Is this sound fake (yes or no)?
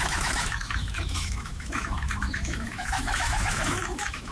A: yes